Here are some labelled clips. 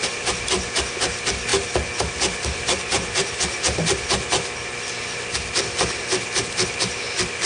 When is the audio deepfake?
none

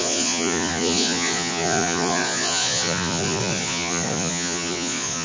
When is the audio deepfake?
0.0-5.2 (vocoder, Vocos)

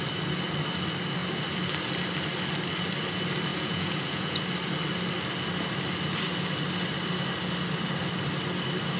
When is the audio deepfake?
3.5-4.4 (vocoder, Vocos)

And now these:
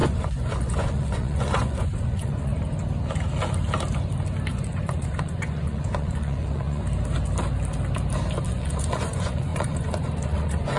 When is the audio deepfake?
0.0-2.5 (vocoder, Vocos); 4.5-6.8; 8.5-10.8

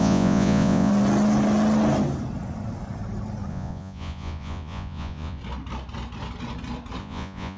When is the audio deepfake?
0.0-0.9 (vocoder, Vocos); 3.5-5.4; 7.0-7.6

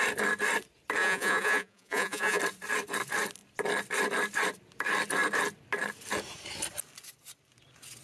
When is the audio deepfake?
1.0-2.4 (vocoder, Vocos)

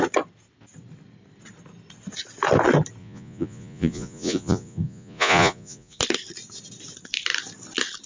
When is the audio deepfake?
3.0-6.0 (vocoder, Vocos)

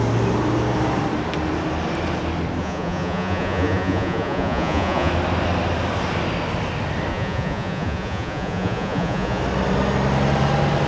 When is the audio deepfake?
2.6-5.1 (vocoder, Vocos); 7.1-9.4